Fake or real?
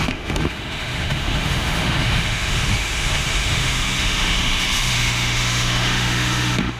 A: fake